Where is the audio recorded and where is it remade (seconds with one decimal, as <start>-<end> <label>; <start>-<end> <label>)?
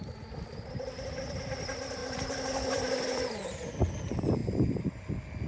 0.0-2.0 recorded; 2.0-3.7 remade; 3.7-4.4 recorded; 4.4-5.1 remade; 5.1-5.5 recorded